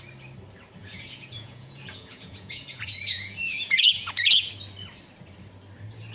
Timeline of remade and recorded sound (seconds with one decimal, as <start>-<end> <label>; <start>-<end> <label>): 0.0-0.8 recorded; 0.8-4.5 remade; 4.5-6.1 recorded